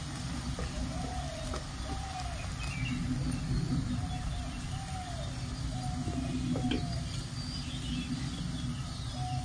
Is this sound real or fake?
real